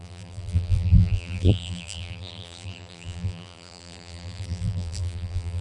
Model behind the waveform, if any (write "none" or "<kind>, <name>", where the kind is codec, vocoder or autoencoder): vocoder, BigVGAN v2